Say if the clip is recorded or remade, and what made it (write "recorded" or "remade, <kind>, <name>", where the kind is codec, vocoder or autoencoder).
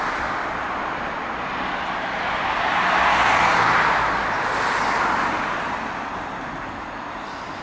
recorded